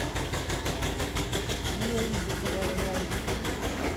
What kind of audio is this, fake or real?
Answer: fake